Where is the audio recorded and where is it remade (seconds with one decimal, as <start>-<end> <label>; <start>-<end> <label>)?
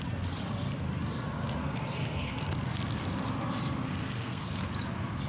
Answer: 0.0-1.6 recorded; 1.6-2.3 remade; 2.3-3.9 recorded; 3.9-4.6 remade; 4.6-5.3 recorded